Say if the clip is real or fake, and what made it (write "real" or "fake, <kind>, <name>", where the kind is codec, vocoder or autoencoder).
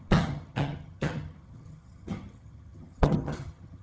fake, vocoder, HiFi-GAN